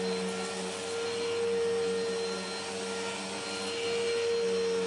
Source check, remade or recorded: recorded